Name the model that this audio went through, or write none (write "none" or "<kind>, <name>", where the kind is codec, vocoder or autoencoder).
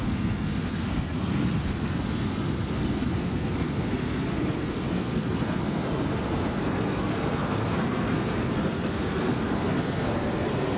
codec, SNAC